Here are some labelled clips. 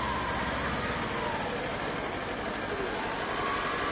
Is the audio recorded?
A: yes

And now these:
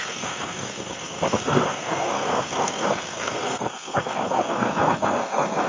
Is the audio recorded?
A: no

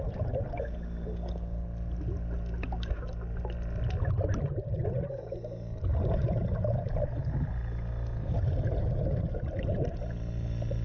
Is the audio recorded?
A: yes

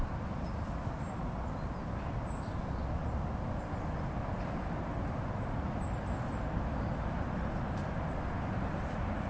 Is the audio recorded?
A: yes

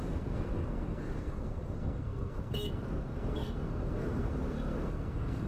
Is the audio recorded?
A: no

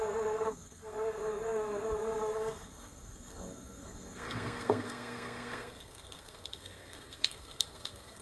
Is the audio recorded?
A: no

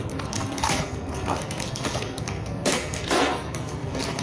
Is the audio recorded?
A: no